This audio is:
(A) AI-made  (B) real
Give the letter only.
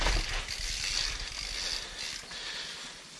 B